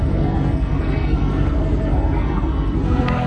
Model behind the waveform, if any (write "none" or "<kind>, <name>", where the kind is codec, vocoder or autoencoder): codec, SNAC